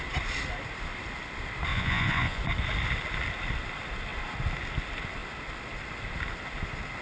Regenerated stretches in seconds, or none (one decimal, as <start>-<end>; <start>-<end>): 1.7-2.4

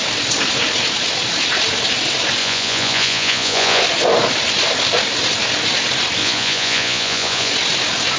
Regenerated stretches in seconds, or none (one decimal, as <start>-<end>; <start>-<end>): 2.4-3.8; 6.2-7.5

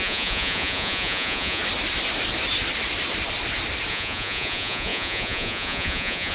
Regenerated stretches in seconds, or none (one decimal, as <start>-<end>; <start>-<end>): 0.0-1.6; 3.9-6.3

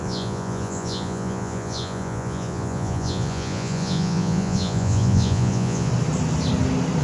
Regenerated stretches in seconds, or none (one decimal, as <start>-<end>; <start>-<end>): 0.0-5.9

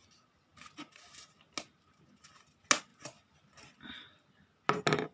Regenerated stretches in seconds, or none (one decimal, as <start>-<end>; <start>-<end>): none